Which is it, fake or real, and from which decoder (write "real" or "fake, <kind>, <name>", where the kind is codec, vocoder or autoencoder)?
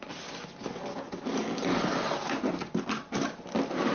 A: real